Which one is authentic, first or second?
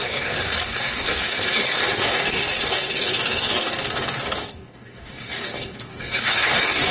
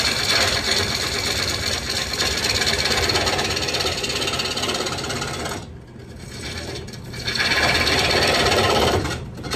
second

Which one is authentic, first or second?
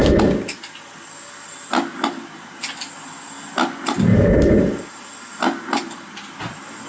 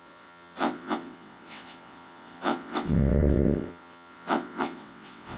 first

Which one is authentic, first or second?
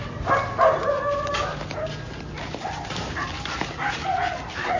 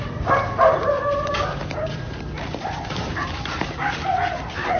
first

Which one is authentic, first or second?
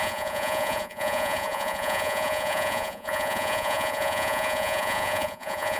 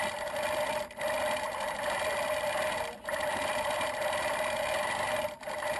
second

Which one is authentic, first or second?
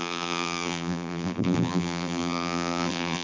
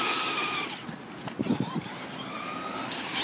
second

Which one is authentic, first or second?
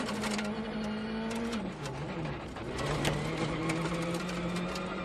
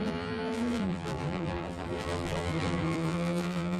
first